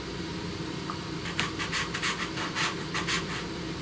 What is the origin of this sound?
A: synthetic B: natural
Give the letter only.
A